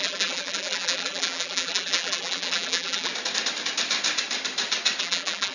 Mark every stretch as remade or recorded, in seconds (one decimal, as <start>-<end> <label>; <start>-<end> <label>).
0.0-3.1 remade; 3.1-5.0 recorded; 5.0-5.5 remade